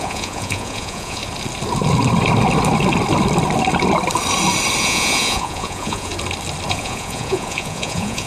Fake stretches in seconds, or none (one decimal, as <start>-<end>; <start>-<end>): 0.0-1.2; 4.8-6.1; 6.7-8.3